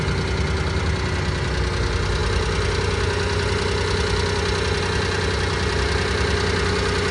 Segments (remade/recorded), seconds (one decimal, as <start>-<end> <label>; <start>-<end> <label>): 0.0-7.1 recorded